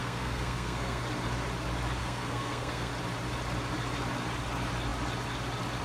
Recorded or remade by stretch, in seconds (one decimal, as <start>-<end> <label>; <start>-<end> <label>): 0.0-1.0 remade; 1.0-2.0 recorded; 2.0-2.9 remade; 2.9-5.8 recorded